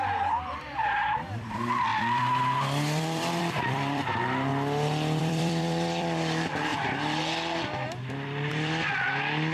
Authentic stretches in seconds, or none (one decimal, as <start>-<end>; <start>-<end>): 4.5-5.2